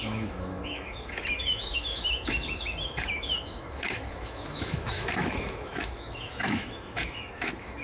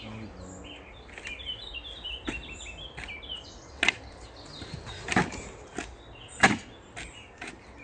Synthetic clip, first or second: first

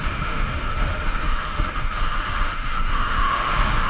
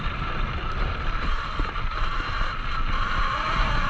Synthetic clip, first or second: first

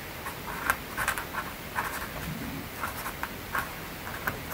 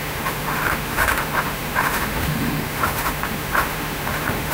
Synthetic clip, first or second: second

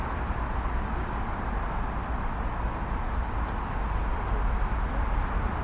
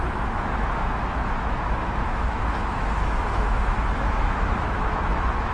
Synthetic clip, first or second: second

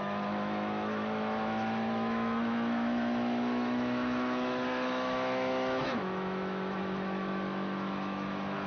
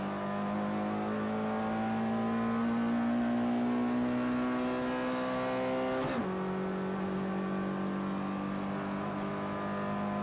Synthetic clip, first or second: first